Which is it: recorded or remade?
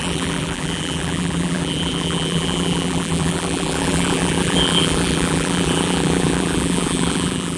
remade